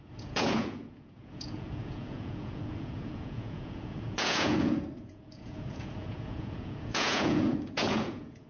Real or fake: fake